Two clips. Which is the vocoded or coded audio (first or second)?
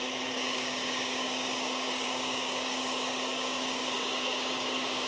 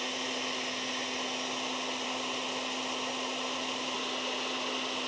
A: first